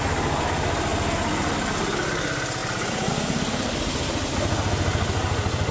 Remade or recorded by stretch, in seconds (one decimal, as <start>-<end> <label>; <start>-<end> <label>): 0.0-5.7 recorded